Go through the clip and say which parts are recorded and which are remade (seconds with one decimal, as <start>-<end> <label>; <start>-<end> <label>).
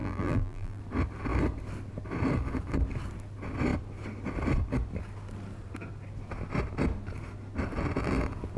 0.0-0.8 remade; 0.8-8.6 recorded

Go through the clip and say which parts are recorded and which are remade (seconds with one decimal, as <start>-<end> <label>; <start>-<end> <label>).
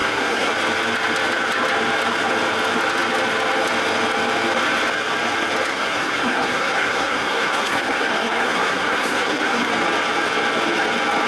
0.0-0.5 remade; 0.5-5.7 recorded; 5.7-9.7 remade; 9.7-11.3 recorded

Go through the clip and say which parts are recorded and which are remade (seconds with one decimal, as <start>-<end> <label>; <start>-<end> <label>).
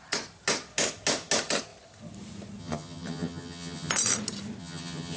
0.0-2.6 recorded; 2.6-3.9 remade; 3.9-4.6 recorded; 4.6-5.2 remade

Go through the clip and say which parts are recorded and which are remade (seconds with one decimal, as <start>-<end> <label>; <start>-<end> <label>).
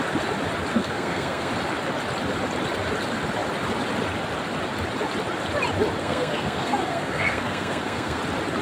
0.0-0.7 recorded; 0.7-1.5 remade; 1.5-6.0 recorded; 6.0-8.2 remade; 8.2-8.6 recorded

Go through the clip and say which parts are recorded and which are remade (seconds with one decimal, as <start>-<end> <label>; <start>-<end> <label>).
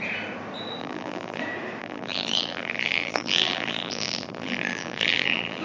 0.0-0.8 recorded; 0.8-1.4 remade; 1.4-1.8 recorded; 1.8-5.6 remade